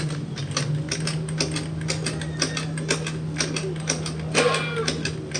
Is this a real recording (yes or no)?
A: yes